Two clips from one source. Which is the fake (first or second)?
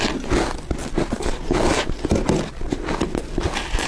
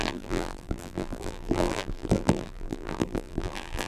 second